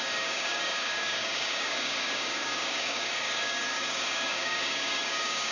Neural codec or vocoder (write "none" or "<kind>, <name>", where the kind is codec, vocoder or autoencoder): codec, DAC